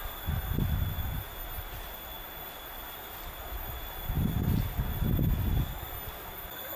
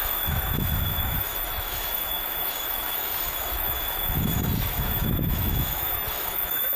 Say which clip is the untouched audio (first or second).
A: first